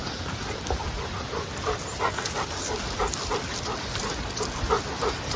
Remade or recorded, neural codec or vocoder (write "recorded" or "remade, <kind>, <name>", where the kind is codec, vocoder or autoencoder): recorded